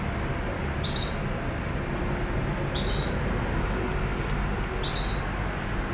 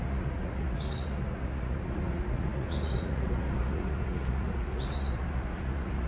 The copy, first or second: second